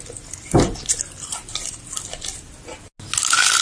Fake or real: real